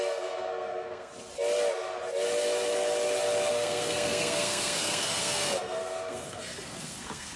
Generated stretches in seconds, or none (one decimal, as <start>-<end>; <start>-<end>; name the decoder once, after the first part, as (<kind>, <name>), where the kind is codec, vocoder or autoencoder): 0.0-1.1 (codec, SNAC); 3.5-7.4